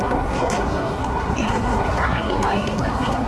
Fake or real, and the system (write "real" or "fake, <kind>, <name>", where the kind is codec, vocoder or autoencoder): fake, codec, SNAC